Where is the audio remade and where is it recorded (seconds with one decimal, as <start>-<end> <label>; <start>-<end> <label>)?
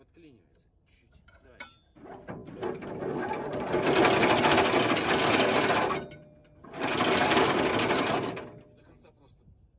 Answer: 0.0-9.8 recorded